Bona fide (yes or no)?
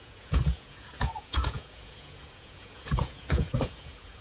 no